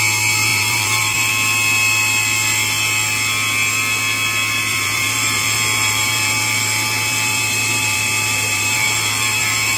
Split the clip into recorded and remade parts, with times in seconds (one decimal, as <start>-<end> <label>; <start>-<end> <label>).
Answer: 0.0-0.5 recorded; 0.5-1.3 remade; 1.3-4.7 recorded; 4.7-9.8 remade